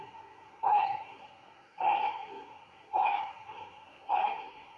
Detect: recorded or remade remade